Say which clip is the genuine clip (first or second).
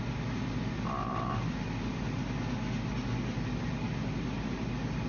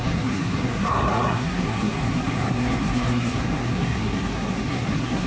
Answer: first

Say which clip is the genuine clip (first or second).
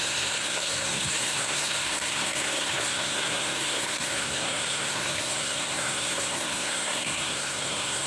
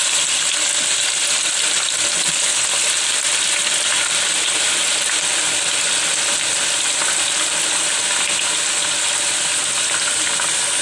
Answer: second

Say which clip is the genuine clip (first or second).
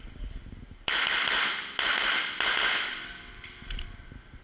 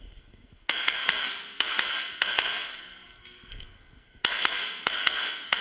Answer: first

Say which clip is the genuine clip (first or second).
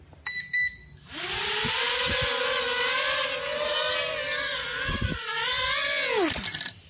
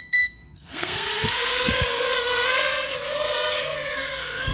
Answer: first